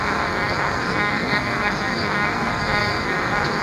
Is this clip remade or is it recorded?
remade